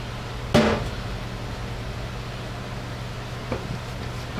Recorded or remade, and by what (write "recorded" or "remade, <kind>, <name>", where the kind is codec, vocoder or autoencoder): recorded